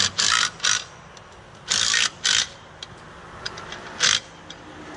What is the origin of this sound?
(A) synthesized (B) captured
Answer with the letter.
B